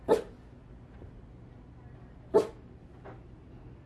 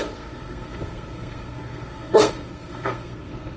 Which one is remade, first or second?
second